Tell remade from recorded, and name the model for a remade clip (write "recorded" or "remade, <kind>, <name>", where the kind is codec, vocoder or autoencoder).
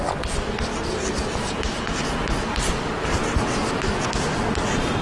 recorded